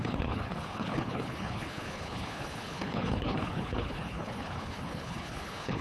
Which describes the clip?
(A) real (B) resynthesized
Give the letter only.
B